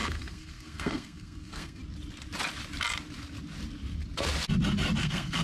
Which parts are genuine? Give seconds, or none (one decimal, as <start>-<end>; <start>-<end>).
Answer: 1.8-5.0